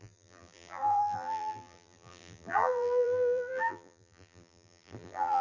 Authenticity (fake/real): fake